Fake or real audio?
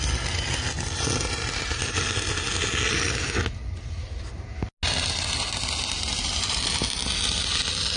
real